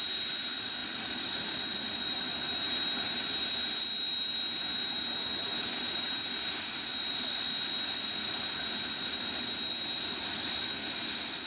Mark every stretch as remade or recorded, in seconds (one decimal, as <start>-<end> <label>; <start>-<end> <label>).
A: 0.0-11.5 recorded